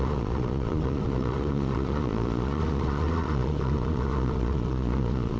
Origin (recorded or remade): remade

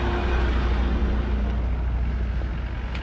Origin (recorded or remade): recorded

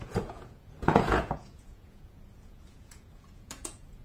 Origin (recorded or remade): remade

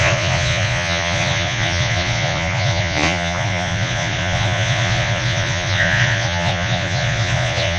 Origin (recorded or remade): remade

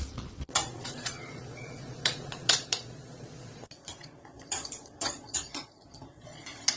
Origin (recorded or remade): remade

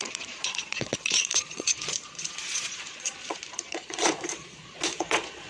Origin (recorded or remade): remade